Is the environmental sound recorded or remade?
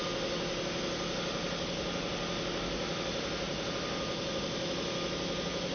recorded